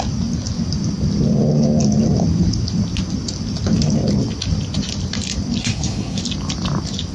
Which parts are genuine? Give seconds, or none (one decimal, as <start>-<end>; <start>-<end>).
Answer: 0.0-5.6; 6.2-7.1